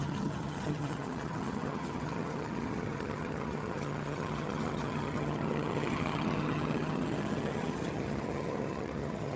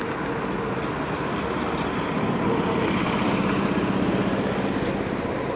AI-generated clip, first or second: first